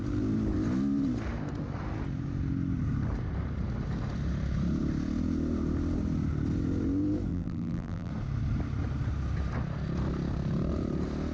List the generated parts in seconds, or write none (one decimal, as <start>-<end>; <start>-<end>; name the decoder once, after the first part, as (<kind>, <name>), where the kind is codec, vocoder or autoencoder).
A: 7.3-8.1 (vocoder, BigVGAN v2)